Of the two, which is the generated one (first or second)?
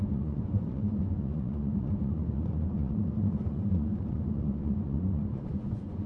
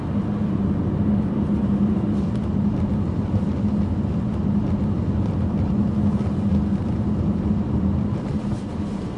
first